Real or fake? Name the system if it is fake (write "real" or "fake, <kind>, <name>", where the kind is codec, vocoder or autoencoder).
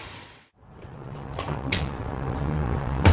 fake, vocoder, WaveNeXt